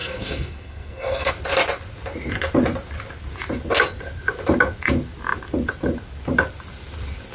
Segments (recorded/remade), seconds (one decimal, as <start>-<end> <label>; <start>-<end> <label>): 0.0-1.3 remade; 1.3-7.3 recorded